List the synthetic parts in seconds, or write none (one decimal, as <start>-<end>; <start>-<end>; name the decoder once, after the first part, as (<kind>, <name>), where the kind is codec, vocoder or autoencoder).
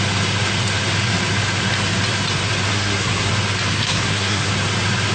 2.7-3.3 (codec, SNAC); 3.7-4.5